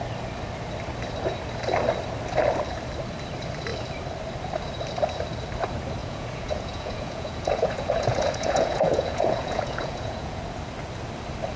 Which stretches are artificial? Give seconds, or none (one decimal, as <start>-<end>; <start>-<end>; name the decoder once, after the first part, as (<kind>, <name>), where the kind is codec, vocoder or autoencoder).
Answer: 6.0-10.4 (vocoder, Vocos)